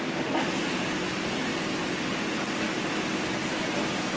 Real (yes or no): yes